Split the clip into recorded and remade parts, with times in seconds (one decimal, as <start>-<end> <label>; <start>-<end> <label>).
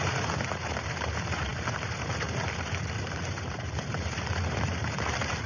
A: 0.0-5.5 remade